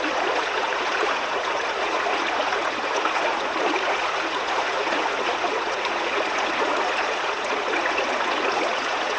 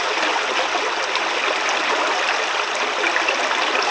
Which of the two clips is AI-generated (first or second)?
first